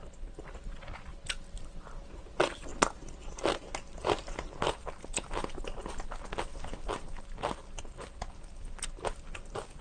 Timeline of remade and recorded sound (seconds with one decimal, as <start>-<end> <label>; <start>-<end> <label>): 0.0-9.8 recorded

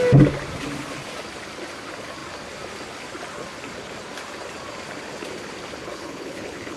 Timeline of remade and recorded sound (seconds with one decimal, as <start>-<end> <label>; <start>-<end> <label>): 0.0-5.8 recorded; 5.8-6.8 remade

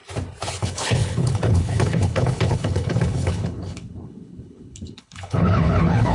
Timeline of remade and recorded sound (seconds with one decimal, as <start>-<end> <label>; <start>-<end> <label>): 0.0-0.6 recorded; 0.6-6.1 remade

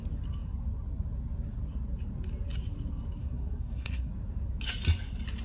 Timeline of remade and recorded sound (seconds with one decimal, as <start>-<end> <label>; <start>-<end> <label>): 0.0-3.2 recorded; 3.2-4.1 remade; 4.1-5.4 recorded

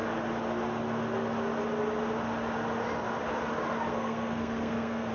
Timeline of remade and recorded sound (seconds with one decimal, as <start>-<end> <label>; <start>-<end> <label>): 0.0-3.9 recorded; 3.9-5.1 remade

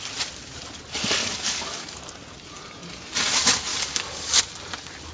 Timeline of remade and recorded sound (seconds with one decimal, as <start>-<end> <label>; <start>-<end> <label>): 0.0-1.2 recorded; 1.2-2.0 remade; 2.0-3.7 recorded; 3.7-4.4 remade; 4.4-5.1 recorded

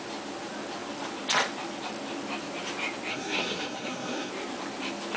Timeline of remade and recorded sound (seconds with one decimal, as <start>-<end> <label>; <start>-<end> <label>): 0.0-3.1 recorded; 3.1-4.3 remade; 4.3-5.2 recorded